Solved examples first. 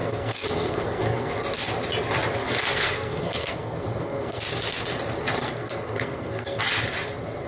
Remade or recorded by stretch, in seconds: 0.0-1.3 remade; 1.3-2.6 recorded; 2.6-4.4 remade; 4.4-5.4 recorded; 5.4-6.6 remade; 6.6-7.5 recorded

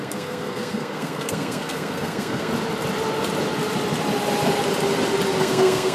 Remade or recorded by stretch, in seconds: 0.0-2.5 remade; 2.5-5.4 recorded; 5.4-5.9 remade

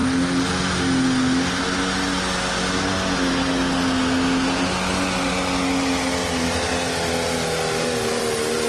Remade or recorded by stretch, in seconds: 0.0-8.7 recorded

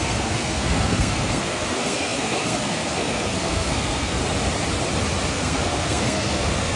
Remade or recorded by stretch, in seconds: 0.0-4.2 remade; 4.2-5.3 recorded; 5.3-6.8 remade

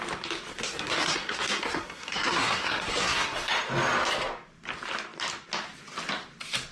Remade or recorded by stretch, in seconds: 0.0-0.5 recorded; 0.5-3.5 remade; 3.5-6.7 recorded

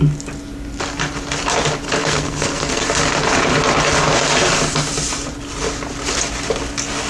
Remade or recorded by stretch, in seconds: 0.0-2.0 recorded; 2.0-2.8 remade; 2.8-7.1 recorded

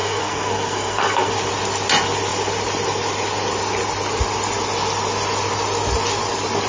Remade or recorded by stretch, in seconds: 0.0-1.3 remade; 1.3-6.7 recorded